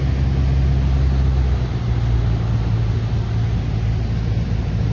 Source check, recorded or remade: recorded